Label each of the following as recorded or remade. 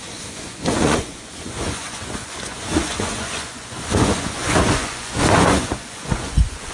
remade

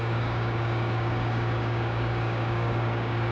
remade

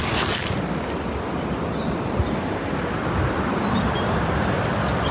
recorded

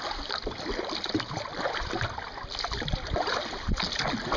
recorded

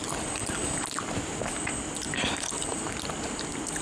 recorded